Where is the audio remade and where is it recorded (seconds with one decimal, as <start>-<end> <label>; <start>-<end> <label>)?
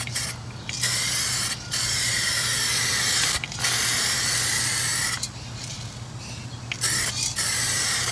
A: 0.0-8.1 recorded